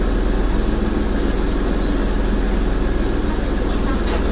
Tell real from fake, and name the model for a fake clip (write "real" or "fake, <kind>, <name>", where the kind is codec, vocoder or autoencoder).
real